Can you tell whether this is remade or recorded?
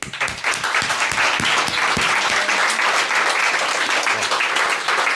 recorded